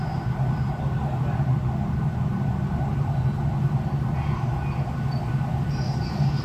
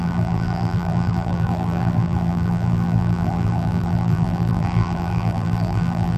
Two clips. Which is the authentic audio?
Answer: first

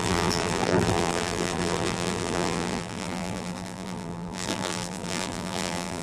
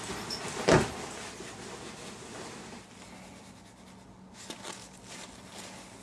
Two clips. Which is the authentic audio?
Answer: second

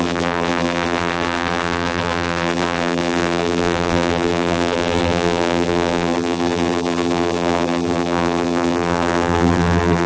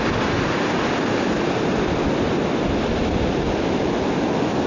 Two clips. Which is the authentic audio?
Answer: second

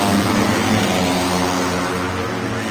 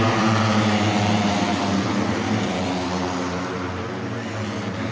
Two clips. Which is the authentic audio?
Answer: first